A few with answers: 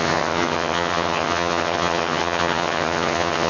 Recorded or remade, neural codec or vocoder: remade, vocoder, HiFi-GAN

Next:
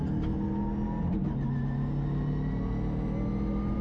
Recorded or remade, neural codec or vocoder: recorded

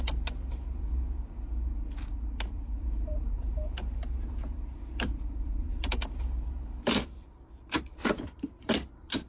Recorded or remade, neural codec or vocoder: remade, vocoder, BigVGAN v2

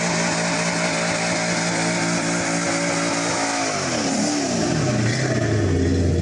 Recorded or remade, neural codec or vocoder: recorded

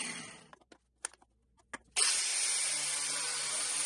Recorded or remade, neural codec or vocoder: recorded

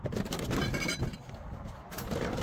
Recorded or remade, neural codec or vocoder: recorded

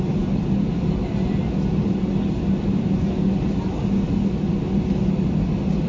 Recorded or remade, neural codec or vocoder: recorded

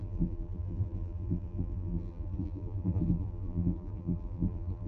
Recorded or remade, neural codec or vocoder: remade, vocoder, BigVGAN v2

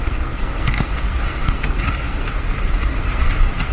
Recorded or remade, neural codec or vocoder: remade, codec, SNAC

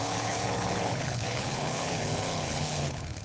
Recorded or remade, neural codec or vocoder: remade, codec, HILCodec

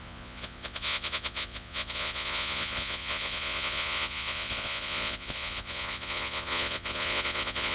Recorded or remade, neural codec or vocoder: remade, vocoder, Vocos